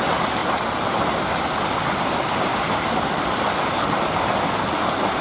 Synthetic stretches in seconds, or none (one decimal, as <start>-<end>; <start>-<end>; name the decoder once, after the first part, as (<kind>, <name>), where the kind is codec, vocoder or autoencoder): none